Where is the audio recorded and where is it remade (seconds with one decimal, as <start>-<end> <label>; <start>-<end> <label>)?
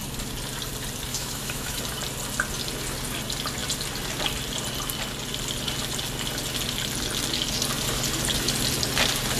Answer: 0.0-1.1 recorded; 1.1-1.8 remade; 1.8-9.4 recorded